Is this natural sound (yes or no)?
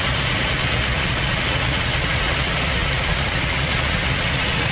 no